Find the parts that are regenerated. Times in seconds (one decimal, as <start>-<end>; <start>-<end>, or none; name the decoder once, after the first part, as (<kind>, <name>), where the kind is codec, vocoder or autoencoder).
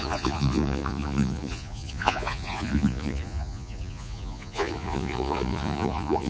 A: 0.0-6.3 (vocoder, Vocos)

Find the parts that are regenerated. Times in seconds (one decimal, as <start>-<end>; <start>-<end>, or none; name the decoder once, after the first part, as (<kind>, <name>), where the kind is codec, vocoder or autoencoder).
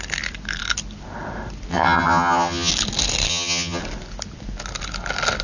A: 1.7-2.7 (vocoder, HiFi-GAN); 3.3-3.8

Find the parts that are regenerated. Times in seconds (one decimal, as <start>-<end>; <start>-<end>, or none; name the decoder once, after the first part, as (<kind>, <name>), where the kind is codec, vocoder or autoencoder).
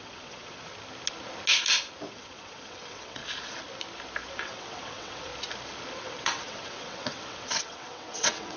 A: 0.0-0.7 (vocoder, WaveNeXt); 2.1-3.2; 4.3-5.3; 5.9-8.6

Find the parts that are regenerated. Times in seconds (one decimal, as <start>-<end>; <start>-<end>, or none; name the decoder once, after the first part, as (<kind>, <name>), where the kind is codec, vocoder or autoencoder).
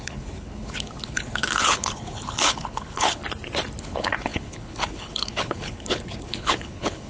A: 0.0-3.2 (codec, HILCodec); 3.8-7.1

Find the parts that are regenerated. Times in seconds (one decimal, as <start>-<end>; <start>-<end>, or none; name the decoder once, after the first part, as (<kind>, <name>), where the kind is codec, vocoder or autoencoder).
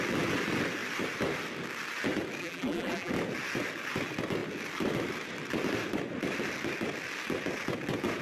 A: 2.4-3.1 (vocoder, BigVGAN v2)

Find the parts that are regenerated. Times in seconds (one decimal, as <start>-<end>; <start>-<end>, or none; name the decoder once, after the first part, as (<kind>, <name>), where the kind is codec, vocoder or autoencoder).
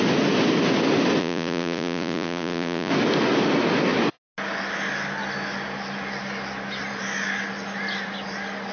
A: 1.2-2.9 (vocoder, Vocos)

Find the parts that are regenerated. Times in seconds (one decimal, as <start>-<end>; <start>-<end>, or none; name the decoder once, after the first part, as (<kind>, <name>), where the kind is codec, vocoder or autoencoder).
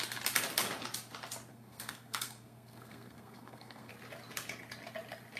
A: 1.5-3.9 (codec, SNAC)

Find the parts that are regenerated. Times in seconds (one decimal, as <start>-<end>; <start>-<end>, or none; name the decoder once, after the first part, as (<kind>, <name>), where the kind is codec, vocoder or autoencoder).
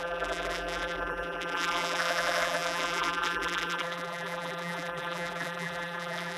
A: 0.0-6.4 (vocoder, BigVGAN v2)